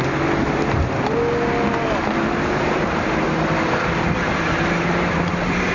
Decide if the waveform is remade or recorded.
recorded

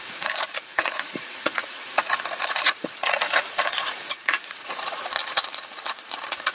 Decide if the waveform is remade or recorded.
remade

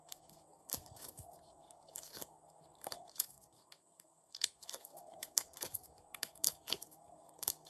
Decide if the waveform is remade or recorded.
remade